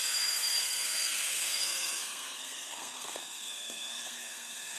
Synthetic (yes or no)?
yes